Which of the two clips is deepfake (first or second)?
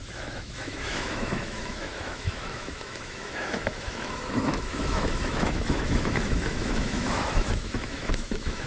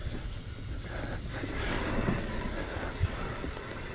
first